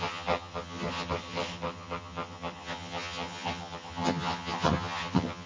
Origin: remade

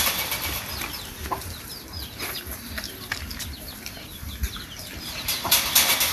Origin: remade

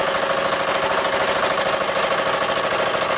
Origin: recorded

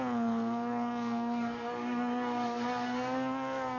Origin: remade